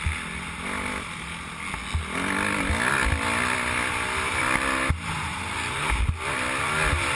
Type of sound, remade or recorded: recorded